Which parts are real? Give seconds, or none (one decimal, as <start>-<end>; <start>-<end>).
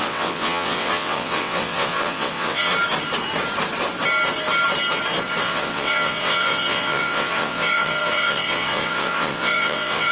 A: 2.7-5.4